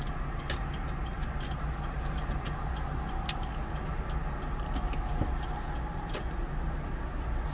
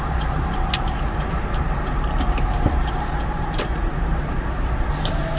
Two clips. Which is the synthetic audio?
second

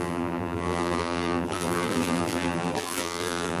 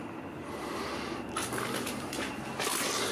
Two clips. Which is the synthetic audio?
first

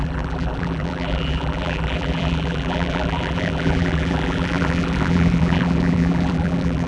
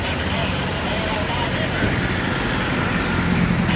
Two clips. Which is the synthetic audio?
first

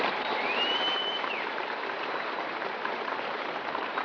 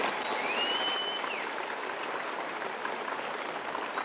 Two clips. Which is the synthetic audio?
first